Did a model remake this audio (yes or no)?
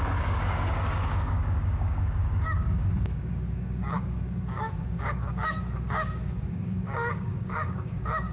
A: yes